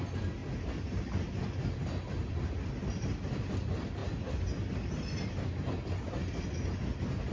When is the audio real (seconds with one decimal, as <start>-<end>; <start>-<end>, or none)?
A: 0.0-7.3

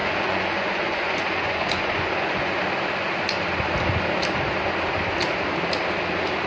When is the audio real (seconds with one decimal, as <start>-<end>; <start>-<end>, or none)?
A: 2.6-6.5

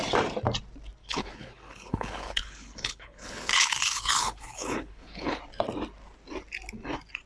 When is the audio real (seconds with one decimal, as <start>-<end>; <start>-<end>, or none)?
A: 0.0-1.0; 5.4-7.3